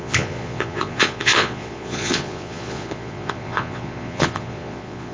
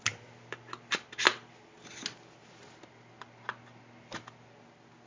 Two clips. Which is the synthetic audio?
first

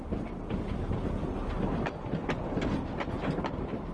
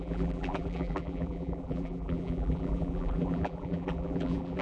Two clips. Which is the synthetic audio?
second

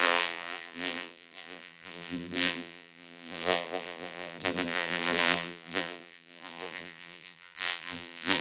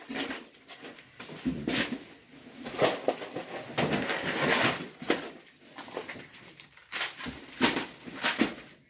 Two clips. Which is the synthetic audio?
first